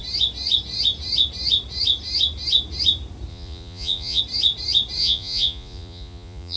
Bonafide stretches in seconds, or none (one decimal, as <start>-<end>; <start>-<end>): 0.0-3.3; 4.2-5.0